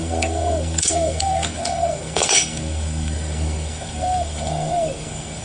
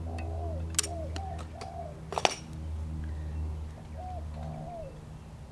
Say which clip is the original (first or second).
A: second